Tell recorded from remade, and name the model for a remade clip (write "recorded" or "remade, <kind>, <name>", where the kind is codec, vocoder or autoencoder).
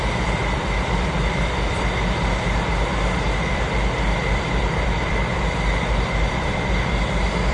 remade, vocoder, BigVGAN v2